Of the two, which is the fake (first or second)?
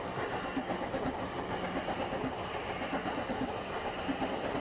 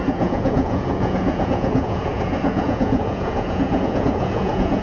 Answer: second